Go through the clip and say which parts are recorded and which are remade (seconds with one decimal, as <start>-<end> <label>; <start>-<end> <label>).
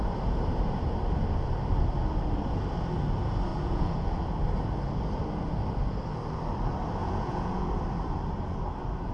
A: 0.0-3.5 recorded; 3.5-4.1 remade; 4.1-7.0 recorded; 7.0-7.7 remade; 7.7-9.1 recorded